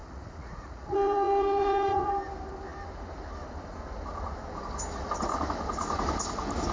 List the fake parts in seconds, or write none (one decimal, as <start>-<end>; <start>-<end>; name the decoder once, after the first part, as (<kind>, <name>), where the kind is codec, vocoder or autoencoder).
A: 0.0-2.1 (vocoder, Vocos)